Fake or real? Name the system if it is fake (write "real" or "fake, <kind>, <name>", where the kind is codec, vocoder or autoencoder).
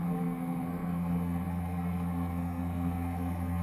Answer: fake, codec, SNAC